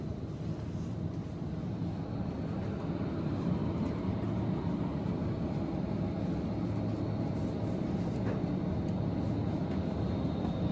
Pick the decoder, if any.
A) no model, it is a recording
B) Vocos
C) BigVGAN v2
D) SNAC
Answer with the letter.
A